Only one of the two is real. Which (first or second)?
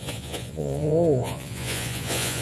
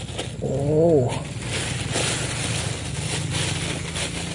second